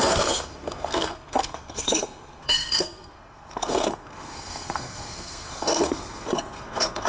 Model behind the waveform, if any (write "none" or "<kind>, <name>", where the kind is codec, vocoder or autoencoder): codec, SNAC